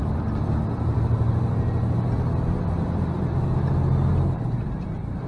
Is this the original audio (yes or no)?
no